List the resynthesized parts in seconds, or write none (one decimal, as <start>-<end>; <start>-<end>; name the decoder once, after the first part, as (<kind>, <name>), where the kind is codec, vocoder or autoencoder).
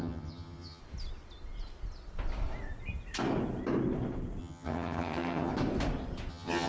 0.0-0.8 (vocoder, HiFi-GAN); 4.4-5.5; 6.3-6.7